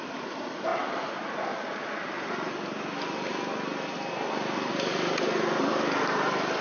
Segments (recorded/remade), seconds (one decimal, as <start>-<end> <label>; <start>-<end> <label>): 0.0-6.6 recorded